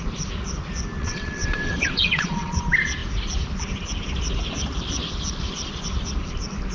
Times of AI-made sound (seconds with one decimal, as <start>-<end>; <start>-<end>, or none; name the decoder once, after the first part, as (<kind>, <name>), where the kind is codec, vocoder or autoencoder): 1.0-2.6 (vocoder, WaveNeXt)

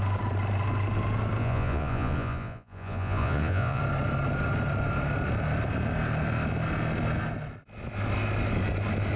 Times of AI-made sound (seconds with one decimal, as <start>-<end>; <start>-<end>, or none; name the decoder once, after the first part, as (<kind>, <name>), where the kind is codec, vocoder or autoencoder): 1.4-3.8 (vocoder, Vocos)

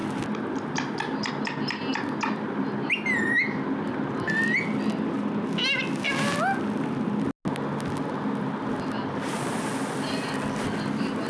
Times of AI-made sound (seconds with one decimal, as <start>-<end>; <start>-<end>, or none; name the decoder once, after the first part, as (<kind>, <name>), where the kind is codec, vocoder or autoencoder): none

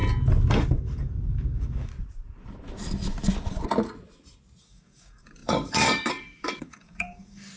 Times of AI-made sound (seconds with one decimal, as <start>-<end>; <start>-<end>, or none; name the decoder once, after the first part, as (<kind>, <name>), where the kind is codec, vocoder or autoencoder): 0.5-1.9 (codec, DAC); 4.6-7.6